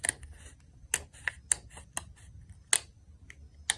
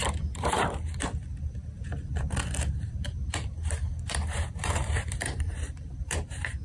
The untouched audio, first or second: first